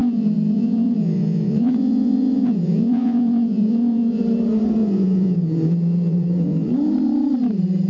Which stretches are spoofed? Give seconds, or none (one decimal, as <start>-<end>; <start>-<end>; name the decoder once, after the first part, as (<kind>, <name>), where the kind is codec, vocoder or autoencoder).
0.0-4.2 (vocoder, Vocos); 4.8-6.7